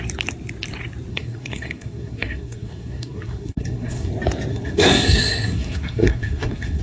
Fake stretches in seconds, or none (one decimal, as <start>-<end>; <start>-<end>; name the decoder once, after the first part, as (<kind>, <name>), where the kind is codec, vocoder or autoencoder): 1.1-4.1 (codec, SNAC); 4.5-6.8